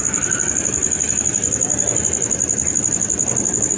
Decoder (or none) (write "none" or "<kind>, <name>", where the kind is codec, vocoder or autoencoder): none